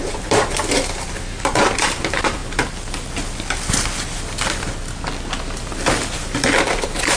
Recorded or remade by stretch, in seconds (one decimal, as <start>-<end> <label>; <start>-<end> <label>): 0.0-2.4 remade; 2.4-6.6 recorded; 6.6-7.2 remade